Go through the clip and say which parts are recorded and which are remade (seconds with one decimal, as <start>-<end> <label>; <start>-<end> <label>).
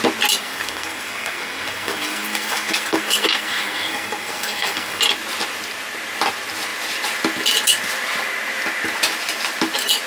0.0-0.4 recorded; 0.4-5.0 remade; 5.0-10.1 recorded